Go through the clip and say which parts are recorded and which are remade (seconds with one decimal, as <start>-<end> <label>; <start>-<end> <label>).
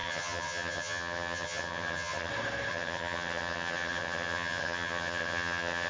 0.0-2.3 remade; 2.3-2.7 recorded; 2.7-5.9 remade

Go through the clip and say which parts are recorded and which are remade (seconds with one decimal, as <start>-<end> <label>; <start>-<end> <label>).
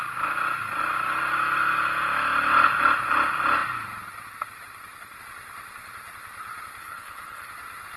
0.0-6.8 recorded; 6.8-7.5 remade; 7.5-8.0 recorded